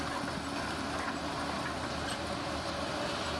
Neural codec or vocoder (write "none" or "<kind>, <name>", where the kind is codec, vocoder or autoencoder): none